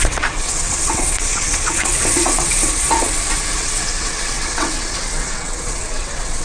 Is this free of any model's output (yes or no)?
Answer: no